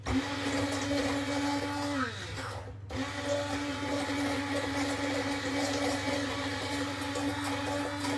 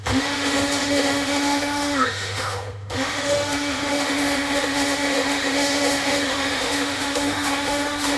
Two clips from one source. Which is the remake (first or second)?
second